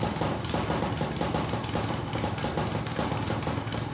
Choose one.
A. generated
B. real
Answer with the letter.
B